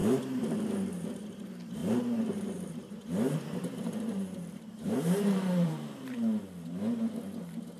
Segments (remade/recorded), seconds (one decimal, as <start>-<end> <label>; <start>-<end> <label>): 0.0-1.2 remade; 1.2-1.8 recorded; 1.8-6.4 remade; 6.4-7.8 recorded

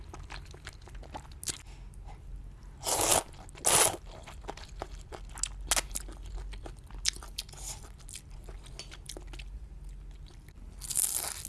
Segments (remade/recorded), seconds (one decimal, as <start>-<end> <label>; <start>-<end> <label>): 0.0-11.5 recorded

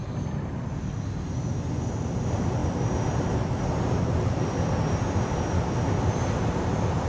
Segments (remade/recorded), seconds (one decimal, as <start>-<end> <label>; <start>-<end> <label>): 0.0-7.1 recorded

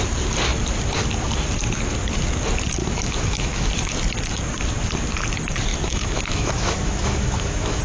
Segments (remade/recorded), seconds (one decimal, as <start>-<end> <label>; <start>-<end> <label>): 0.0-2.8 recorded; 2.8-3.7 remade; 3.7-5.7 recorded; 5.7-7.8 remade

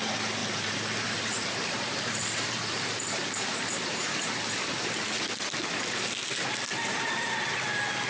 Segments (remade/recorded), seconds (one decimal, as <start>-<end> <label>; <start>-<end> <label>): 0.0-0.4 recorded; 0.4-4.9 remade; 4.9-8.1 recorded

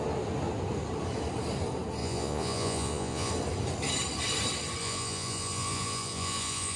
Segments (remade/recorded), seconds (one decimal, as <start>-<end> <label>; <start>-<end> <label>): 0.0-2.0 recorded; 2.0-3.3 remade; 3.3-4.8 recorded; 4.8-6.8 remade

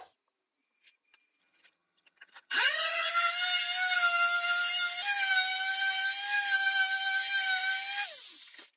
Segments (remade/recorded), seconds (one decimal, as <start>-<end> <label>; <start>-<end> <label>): 0.0-1.4 recorded; 1.4-3.1 remade; 3.1-8.8 recorded

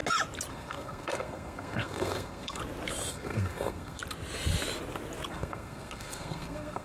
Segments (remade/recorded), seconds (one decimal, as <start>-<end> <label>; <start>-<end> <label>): 0.0-0.5 recorded; 0.5-2.6 remade; 2.6-3.1 recorded; 3.1-4.0 remade; 4.0-5.3 recorded; 5.3-6.8 remade